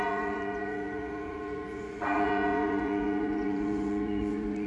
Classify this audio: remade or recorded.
remade